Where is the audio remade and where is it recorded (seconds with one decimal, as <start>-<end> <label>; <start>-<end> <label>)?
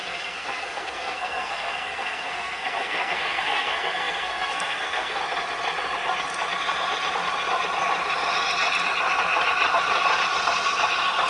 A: 0.0-5.2 remade; 5.2-11.3 recorded